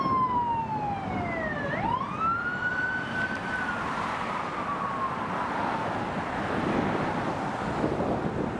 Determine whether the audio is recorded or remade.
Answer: recorded